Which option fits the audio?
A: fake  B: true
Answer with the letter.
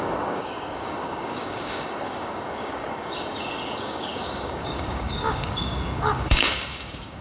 A